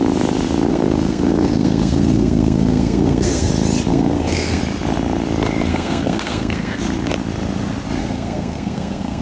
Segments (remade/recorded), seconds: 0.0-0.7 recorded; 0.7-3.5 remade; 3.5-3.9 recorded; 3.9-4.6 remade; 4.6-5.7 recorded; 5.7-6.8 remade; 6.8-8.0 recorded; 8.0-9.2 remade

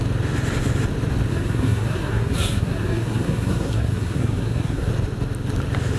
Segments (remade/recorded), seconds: 0.0-1.3 recorded; 1.3-4.9 remade; 4.9-6.0 recorded

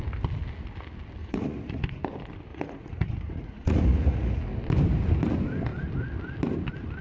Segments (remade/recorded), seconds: 0.0-1.2 recorded; 1.2-1.8 remade; 1.8-2.5 recorded; 2.5-4.4 remade; 4.4-7.0 recorded

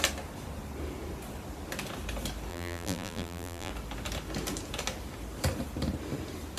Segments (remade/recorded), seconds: 0.0-2.5 recorded; 2.5-3.7 remade; 3.7-6.6 recorded

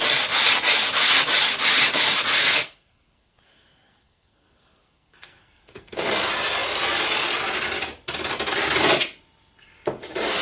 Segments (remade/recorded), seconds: 0.0-2.4 recorded; 2.4-6.1 remade; 6.1-10.4 recorded

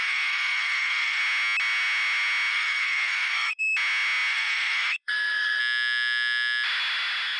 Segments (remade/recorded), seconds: 0.0-1.2 remade; 1.2-2.5 recorded; 2.5-3.6 remade; 3.6-4.3 recorded; 4.3-5.6 remade; 5.6-7.4 recorded